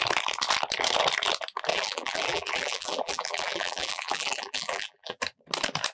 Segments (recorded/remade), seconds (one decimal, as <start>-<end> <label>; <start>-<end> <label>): 0.0-1.7 recorded; 1.7-5.2 remade; 5.2-5.9 recorded